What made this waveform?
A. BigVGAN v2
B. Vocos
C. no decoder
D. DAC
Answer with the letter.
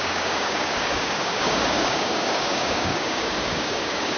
D